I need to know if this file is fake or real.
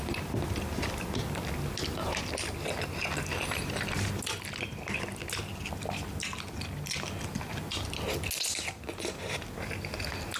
real